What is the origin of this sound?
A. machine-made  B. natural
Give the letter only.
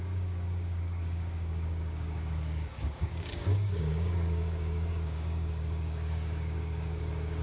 A